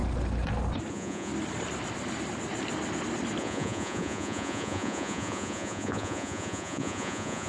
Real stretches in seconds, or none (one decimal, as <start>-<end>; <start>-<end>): 0.0-0.9; 1.3-3.4